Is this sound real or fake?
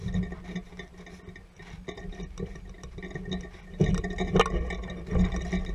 real